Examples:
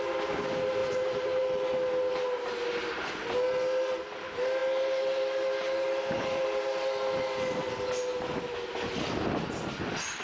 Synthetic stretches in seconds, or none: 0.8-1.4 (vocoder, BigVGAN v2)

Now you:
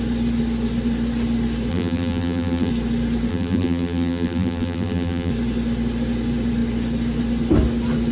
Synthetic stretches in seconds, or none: 1.7-2.7 (vocoder, BigVGAN v2); 3.3-5.3

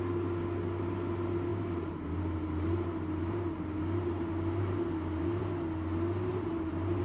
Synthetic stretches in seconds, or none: 1.5-5.4 (vocoder, BigVGAN v2); 6.3-7.0

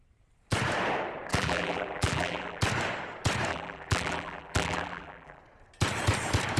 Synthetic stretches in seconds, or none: 1.3-2.6 (vocoder, BigVGAN v2); 3.5-5.4

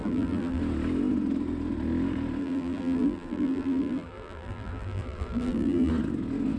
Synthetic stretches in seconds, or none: 0.0-0.6 (vocoder, BigVGAN v2); 2.4-5.9

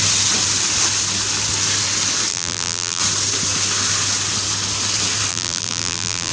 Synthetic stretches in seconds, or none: 2.3-3.0 (vocoder, BigVGAN v2); 5.3-6.3

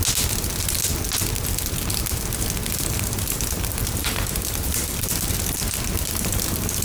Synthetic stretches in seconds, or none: 4.0-5.2 (vocoder, BigVGAN v2)